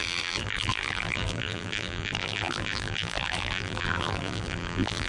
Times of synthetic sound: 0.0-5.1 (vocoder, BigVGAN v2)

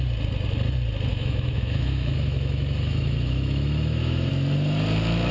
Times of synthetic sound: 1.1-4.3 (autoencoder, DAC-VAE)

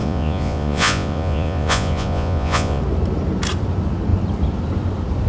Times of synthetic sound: 0.0-2.8 (vocoder, Vocos)

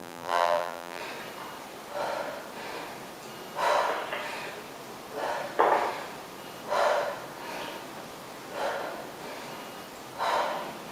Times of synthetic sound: 0.0-1.0 (vocoder, BigVGAN v2)